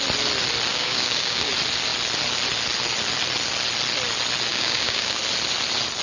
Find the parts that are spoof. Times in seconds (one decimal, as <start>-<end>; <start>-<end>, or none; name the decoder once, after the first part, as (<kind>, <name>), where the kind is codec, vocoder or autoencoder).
0.7-1.5 (codec, DAC); 4.5-5.2